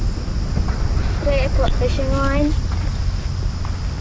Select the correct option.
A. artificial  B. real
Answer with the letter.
B